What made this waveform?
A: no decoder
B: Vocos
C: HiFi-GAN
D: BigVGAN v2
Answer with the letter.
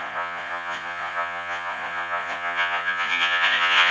B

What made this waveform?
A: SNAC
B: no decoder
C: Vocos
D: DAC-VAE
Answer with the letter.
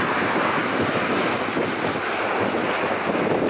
B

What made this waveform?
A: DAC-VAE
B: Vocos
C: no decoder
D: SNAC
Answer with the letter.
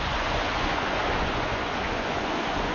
B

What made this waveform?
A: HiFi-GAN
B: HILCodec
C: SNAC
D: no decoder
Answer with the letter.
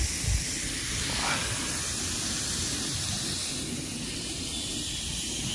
D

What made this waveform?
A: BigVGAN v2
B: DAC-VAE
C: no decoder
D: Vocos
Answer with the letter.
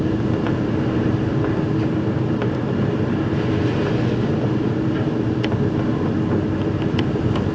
C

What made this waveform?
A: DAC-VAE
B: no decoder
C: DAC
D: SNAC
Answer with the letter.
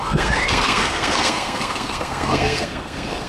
D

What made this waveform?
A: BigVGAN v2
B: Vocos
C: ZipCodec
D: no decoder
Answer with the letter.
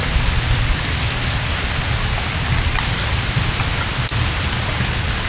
D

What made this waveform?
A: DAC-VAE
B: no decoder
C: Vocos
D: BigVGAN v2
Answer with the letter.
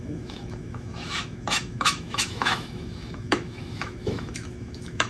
A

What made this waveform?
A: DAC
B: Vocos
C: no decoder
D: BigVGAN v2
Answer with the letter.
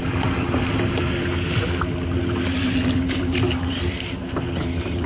C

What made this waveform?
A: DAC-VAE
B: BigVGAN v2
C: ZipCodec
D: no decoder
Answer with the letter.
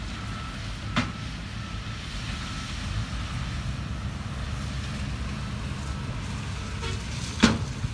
D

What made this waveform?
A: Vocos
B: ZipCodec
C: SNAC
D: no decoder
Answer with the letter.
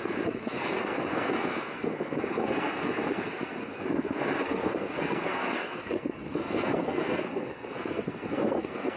C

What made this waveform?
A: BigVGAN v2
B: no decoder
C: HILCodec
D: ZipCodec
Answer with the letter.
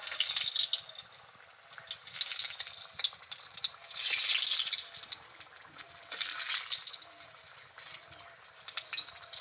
B